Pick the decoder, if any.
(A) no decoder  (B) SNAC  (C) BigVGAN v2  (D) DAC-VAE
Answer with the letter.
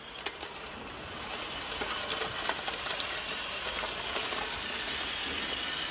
A